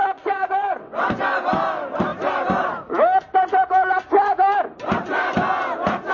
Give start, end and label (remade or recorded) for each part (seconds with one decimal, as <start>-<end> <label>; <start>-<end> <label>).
0.0-1.2 remade; 1.2-6.1 recorded